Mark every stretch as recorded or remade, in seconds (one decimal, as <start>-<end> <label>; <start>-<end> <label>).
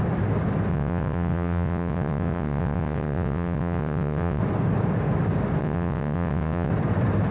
0.0-0.7 recorded; 0.7-4.4 remade; 4.4-5.6 recorded; 5.6-6.7 remade; 6.7-7.3 recorded